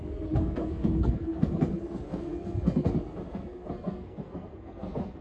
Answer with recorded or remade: remade